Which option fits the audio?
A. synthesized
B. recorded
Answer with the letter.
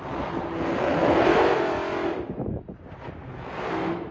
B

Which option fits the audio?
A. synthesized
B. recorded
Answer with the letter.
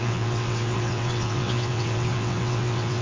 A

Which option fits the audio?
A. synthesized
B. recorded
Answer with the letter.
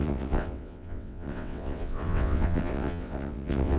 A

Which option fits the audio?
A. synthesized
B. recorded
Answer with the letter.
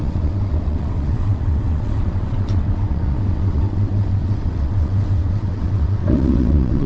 A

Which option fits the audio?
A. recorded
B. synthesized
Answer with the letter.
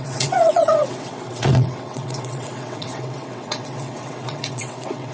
B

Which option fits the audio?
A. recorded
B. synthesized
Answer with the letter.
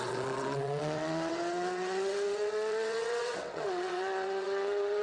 B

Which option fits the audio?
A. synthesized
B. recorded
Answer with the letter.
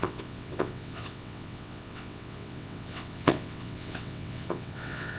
A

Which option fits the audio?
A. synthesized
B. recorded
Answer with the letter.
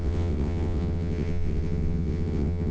A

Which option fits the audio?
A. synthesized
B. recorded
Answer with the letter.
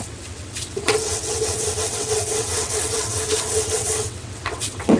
A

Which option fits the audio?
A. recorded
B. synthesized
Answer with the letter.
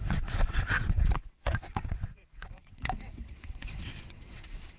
B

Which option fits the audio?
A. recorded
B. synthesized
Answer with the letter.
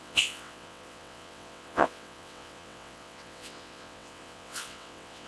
B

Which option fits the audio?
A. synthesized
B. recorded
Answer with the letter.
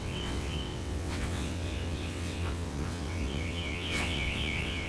A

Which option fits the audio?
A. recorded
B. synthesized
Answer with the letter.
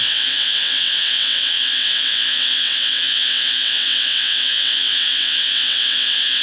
B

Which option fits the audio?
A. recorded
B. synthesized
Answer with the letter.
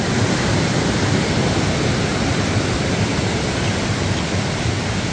A